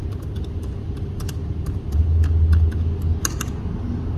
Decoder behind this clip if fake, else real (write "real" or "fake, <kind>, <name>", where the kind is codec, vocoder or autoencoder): real